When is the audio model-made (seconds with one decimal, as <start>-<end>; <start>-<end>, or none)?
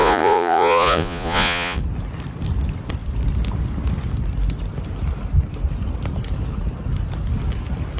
0.0-1.8